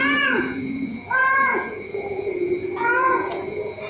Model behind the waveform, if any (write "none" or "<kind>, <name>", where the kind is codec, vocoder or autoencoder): vocoder, Vocos